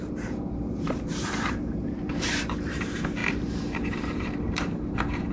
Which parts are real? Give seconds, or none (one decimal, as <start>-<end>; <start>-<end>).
none